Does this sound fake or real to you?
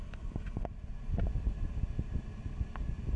real